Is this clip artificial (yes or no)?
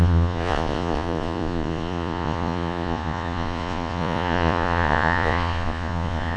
yes